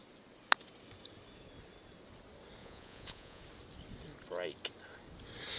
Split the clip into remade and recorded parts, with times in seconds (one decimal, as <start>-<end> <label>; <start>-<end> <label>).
0.0-2.6 recorded; 2.6-3.4 remade; 3.4-5.6 recorded